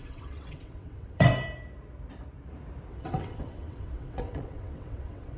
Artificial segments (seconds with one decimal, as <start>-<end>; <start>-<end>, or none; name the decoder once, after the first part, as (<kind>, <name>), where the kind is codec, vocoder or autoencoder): 0.0-1.3 (vocoder, WaveNeXt); 2.9-5.4